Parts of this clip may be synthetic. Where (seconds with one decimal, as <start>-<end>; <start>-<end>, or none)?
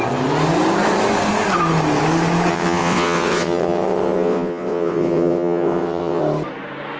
2.5-6.2